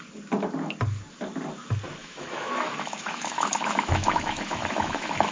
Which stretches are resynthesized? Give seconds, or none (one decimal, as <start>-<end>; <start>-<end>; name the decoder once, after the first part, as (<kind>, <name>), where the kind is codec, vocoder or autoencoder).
2.0-5.3 (autoencoder, DAC-VAE)